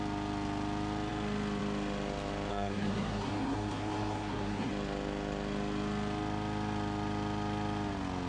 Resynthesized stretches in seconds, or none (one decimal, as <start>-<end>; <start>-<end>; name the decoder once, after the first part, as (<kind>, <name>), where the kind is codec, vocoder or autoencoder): 2.5-4.7 (codec, SNAC)